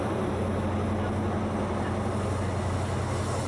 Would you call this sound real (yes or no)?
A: yes